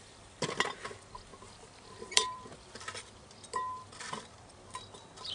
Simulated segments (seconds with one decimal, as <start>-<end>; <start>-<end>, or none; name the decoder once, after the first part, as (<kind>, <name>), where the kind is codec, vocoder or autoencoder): 0.0-5.3 (vocoder, BigVGAN v2)